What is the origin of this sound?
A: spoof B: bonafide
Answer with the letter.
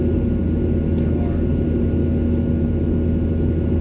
B